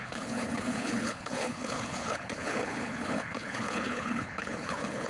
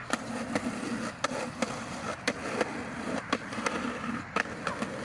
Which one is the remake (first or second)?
first